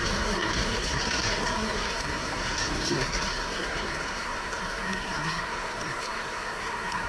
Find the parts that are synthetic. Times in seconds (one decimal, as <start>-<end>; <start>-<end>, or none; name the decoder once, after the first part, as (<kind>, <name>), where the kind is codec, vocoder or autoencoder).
0.0-7.1 (codec, SNAC)